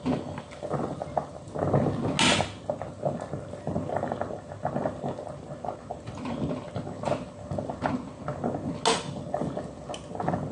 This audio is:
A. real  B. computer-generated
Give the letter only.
A